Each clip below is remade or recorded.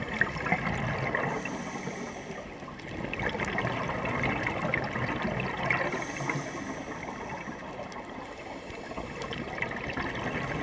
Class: recorded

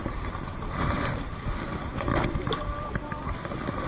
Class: remade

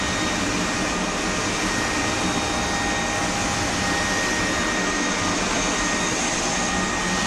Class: recorded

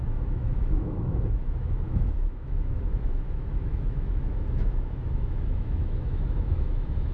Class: remade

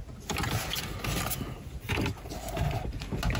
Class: recorded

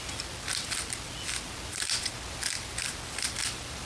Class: recorded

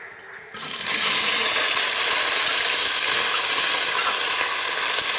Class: recorded